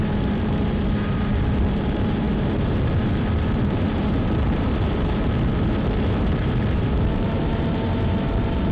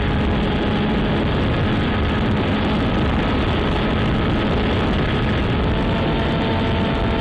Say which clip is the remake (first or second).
first